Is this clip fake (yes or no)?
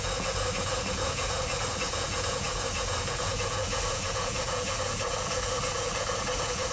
yes